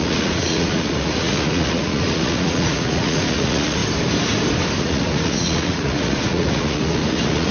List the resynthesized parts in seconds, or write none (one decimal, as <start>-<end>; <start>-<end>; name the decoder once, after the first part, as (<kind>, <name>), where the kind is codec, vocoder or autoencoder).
0.0-3.8 (vocoder, Vocos); 4.8-7.5